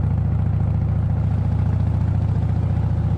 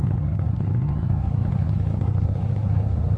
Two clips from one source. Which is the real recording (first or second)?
first